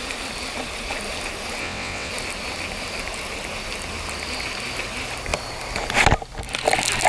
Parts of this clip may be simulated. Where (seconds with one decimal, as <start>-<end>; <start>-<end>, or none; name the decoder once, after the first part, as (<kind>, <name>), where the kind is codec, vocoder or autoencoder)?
1.6-2.1 (vocoder, WaveNeXt)